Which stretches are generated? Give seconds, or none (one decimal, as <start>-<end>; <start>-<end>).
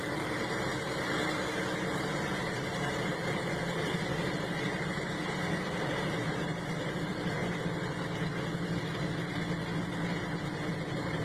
0.0-0.7; 1.9-5.4; 6.3-7.4; 10.2-11.2